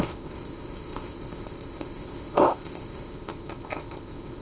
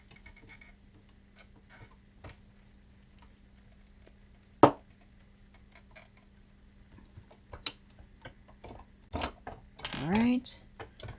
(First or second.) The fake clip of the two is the first